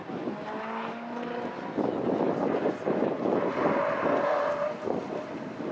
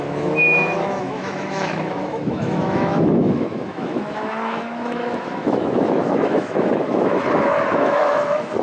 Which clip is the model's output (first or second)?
second